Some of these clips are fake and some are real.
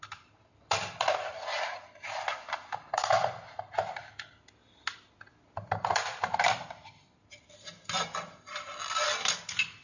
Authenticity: real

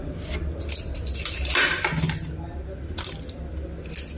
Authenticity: real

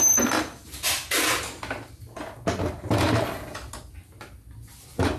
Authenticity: real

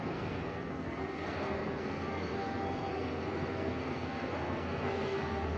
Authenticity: fake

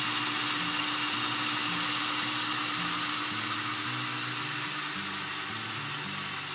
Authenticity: real